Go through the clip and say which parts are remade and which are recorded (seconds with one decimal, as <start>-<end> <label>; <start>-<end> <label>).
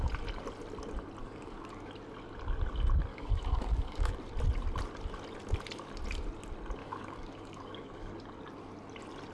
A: 0.0-1.2 recorded; 1.2-1.9 remade; 1.9-3.1 recorded; 3.1-4.1 remade; 4.1-6.8 recorded; 6.8-8.1 remade; 8.1-9.3 recorded